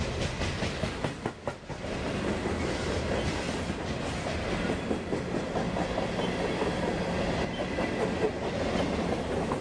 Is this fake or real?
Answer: real